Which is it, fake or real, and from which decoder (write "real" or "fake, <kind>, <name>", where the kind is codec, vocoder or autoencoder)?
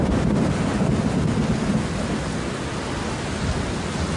real